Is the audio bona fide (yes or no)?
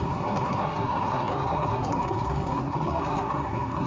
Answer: no